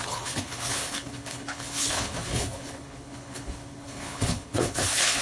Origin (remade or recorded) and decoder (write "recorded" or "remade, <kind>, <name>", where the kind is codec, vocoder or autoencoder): remade, codec, HILCodec